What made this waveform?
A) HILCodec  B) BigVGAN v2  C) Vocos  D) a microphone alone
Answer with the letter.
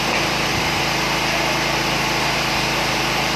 B